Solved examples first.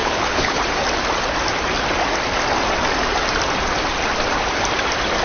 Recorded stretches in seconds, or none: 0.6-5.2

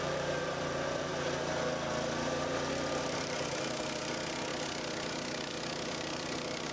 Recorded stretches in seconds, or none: 1.1-2.7

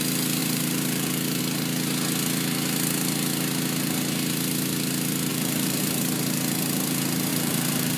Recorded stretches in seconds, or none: 0.0-0.4; 1.4-5.3; 5.8-7.3

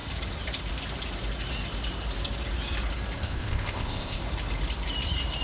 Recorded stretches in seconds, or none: 0.0-3.2; 4.2-5.4

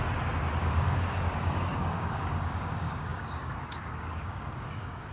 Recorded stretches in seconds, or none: 0.0-0.6